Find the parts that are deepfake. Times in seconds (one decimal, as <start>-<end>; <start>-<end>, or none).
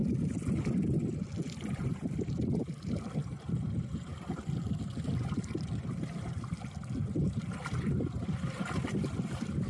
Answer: none